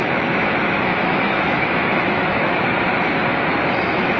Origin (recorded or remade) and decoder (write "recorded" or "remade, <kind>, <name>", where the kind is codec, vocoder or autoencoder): remade, autoencoder, DAC-VAE